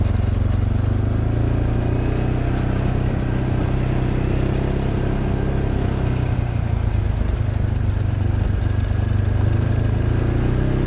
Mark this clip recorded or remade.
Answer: recorded